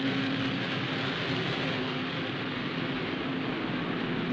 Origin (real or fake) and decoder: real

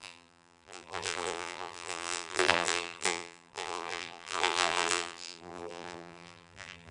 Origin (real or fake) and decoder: fake, vocoder, BigVGAN v2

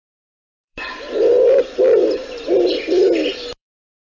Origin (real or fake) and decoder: fake, vocoder, BigVGAN v2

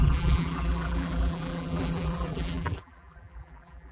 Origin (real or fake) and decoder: fake, vocoder, BigVGAN v2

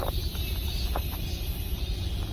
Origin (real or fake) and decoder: fake, vocoder, BigVGAN v2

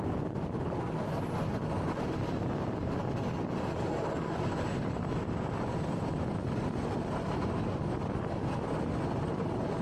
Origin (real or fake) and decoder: real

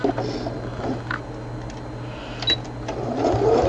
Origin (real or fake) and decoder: real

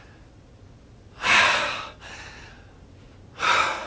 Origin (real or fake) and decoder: fake, vocoder, BigVGAN v2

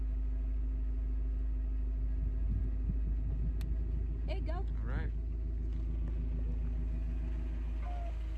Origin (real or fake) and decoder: real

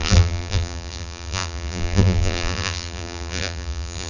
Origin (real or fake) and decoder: fake, vocoder, BigVGAN v2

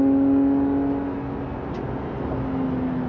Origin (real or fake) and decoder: real